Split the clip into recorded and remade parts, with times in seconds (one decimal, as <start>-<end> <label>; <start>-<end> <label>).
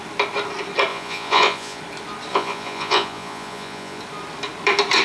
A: 0.0-0.9 recorded; 0.9-1.8 remade; 1.8-2.3 recorded; 2.3-4.0 remade; 4.0-5.0 recorded